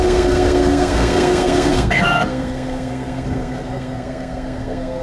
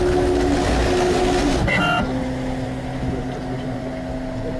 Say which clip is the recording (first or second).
second